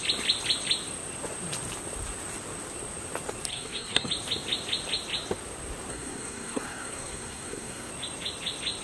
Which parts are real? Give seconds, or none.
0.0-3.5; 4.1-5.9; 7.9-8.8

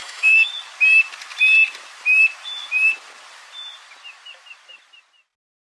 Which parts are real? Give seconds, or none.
0.5-5.6

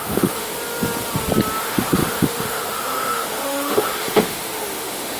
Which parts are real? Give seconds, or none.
0.5-1.6

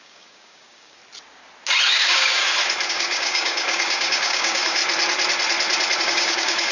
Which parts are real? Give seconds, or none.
1.0-1.9; 2.4-2.9; 4.8-6.0

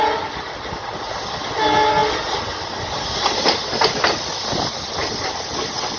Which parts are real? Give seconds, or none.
0.0-6.0

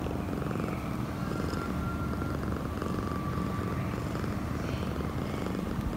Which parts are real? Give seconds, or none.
0.0-6.0

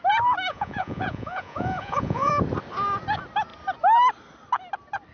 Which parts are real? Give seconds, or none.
0.0-0.5; 2.3-5.1